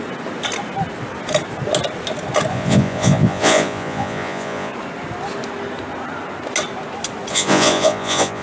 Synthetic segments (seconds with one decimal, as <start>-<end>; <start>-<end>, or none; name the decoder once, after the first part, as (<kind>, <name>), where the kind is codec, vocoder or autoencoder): 2.5-4.7 (vocoder, Vocos); 7.3-8.4